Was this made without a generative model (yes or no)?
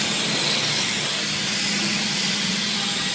yes